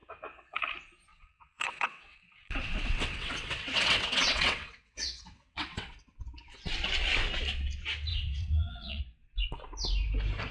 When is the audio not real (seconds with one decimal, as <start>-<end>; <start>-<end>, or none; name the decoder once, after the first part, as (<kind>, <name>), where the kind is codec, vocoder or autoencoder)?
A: 0.0-0.6 (vocoder, WaveNeXt); 1.1-6.2; 8.1-9.0